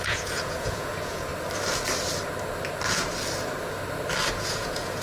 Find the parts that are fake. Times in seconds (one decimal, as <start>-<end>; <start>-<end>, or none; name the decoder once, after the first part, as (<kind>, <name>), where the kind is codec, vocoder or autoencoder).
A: 0.0-1.3 (vocoder, Vocos); 4.3-5.0